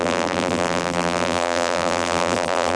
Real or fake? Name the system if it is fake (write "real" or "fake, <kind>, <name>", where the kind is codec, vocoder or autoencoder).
fake, vocoder, BigVGAN v2